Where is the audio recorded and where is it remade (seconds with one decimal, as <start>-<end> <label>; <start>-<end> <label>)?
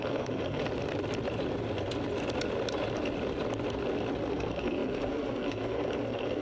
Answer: 0.0-0.6 remade; 0.6-4.3 recorded; 4.3-6.4 remade